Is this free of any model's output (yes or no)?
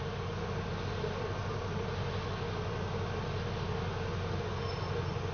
yes